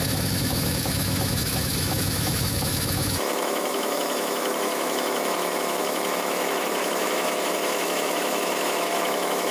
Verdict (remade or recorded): remade